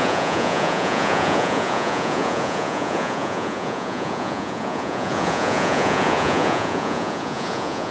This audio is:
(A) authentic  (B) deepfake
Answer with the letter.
B